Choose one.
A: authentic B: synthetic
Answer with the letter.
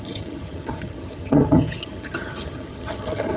B